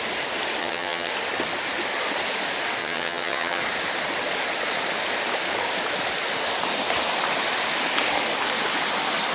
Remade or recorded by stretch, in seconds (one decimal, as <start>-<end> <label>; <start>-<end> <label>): 0.0-0.6 recorded; 0.6-1.1 remade; 1.1-2.8 recorded; 2.8-3.6 remade; 3.6-9.3 recorded